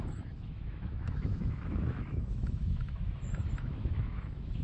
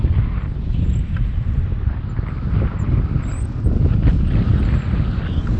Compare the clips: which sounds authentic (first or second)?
second